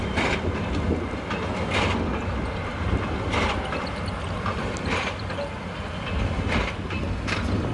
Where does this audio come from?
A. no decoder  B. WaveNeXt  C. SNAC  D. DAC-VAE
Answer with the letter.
A